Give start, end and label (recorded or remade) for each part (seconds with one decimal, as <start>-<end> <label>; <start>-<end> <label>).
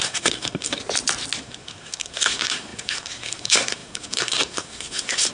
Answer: 0.0-0.8 remade; 0.8-1.4 recorded; 1.4-5.3 remade